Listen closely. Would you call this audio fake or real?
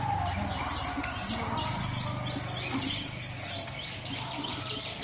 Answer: real